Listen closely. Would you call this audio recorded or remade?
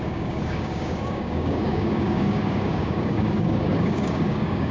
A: remade